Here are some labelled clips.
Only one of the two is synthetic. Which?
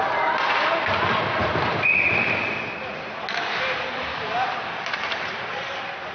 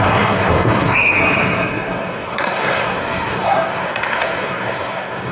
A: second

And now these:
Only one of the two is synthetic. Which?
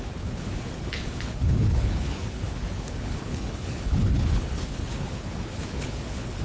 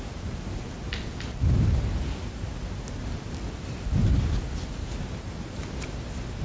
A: first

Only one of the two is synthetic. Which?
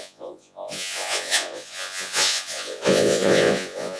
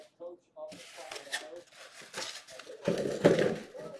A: first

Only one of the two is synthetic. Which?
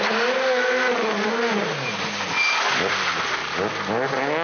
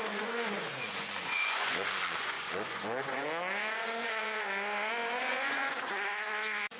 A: second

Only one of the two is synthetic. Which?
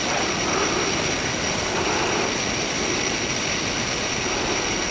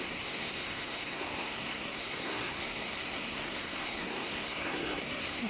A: second